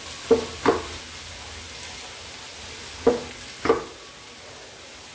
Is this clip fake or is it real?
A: real